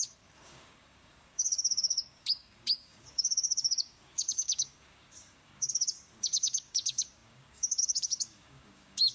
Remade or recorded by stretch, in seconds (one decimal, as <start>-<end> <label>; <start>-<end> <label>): 0.0-9.1 remade